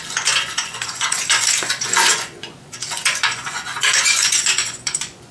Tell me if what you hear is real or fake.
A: fake